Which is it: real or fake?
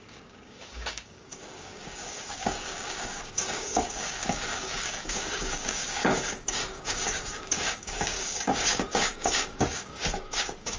fake